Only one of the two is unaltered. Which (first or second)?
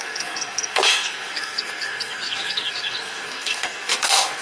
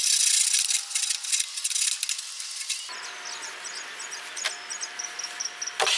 second